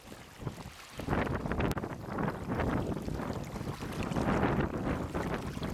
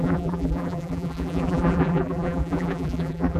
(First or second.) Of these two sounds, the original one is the first